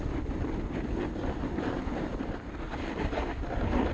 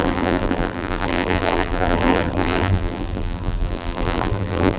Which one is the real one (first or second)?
first